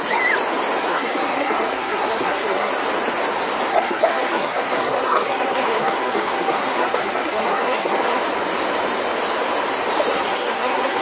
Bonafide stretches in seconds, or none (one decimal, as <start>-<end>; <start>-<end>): 0.0-0.8; 2.7-3.7; 8.2-10.1

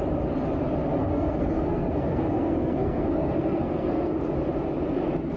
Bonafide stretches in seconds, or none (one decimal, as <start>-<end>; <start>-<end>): 0.0-1.0; 4.2-5.4

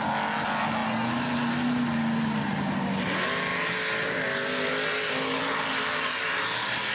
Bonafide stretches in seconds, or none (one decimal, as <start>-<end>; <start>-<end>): 0.0-6.9

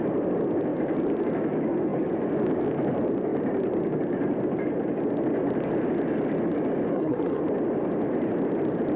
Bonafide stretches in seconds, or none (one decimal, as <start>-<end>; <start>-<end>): 0.0-6.9; 7.4-9.0